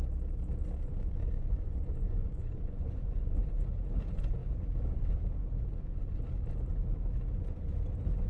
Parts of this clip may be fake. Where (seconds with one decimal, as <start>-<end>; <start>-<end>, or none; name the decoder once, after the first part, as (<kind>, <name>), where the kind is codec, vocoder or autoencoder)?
0.6-3.6 (vocoder, Vocos)